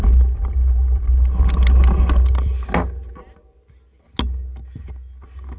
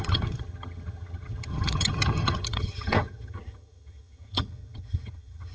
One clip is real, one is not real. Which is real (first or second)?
first